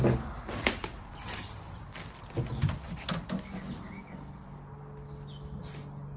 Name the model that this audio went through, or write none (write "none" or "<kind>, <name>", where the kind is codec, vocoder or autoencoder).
none